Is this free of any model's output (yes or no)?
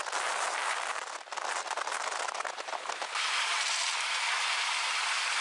yes